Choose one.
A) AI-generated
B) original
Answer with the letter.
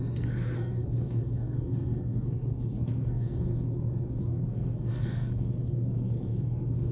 A